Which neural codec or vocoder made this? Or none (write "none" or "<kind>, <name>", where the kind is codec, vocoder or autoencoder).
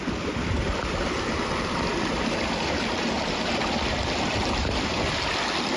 none